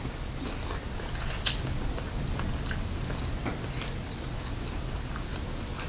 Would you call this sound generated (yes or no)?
no